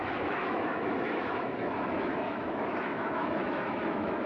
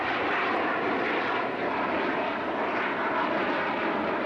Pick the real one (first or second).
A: second